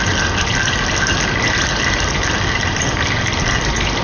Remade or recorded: recorded